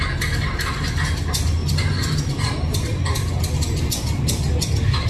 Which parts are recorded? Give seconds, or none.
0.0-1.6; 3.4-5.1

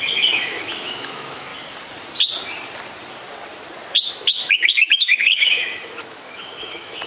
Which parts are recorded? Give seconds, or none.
1.5-4.1

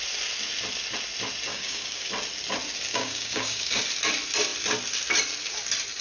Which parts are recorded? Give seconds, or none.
0.0-1.5; 2.1-2.9; 3.8-6.0

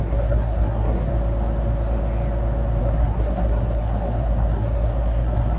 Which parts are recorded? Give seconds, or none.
1.1-2.8

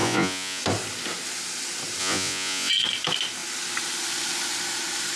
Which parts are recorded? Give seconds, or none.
0.6-2.0; 2.7-5.2

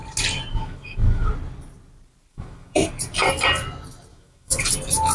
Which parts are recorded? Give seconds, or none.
0.0-0.5; 1.3-2.3; 2.9-4.1; 4.6-5.1

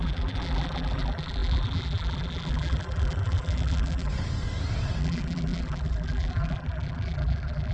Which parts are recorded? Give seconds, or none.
4.1-5.0